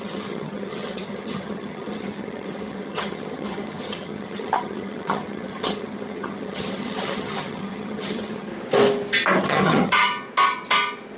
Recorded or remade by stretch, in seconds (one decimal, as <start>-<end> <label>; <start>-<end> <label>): 0.0-8.5 remade; 8.5-9.4 recorded; 9.4-10.1 remade; 10.1-11.2 recorded

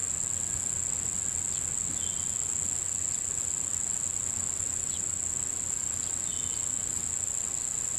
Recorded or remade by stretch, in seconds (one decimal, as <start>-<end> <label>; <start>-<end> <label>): 0.0-8.0 recorded

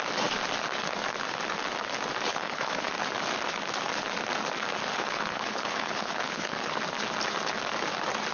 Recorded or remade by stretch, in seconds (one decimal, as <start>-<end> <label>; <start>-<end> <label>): 0.0-2.3 recorded; 2.3-2.9 remade; 2.9-4.9 recorded; 4.9-6.7 remade; 6.7-8.3 recorded

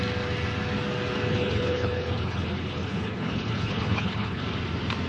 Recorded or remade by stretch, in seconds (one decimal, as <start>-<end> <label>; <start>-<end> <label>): 0.0-1.3 recorded; 1.3-4.4 remade; 4.4-5.1 recorded